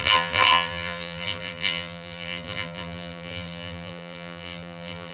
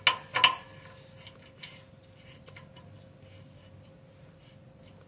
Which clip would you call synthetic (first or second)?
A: first